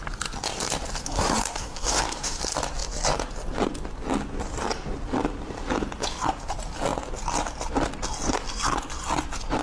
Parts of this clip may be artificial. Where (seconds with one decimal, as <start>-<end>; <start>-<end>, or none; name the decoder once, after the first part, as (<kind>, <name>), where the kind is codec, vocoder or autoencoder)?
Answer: 1.0-2.4 (codec, SNAC)